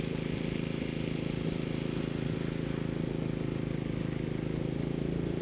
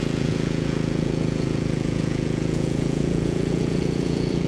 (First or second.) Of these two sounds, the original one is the first